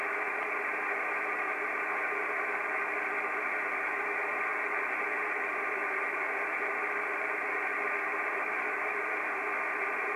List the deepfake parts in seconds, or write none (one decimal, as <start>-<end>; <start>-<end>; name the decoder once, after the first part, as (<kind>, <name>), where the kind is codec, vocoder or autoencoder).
4.5-9.6 (vocoder, BigVGAN v2)